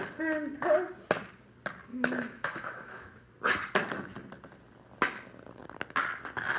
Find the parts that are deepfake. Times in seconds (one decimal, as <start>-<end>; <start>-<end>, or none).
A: 1.9-3.3